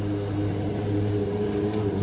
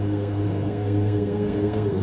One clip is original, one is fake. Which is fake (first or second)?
second